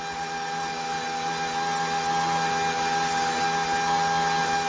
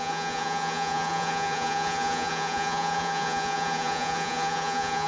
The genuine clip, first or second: first